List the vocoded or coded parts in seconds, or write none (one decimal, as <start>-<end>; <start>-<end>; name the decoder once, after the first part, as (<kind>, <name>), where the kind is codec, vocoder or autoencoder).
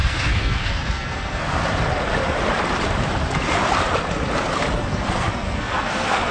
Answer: 0.0-1.6 (codec, SNAC); 5.1-6.3